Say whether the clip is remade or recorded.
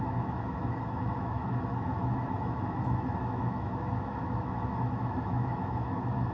remade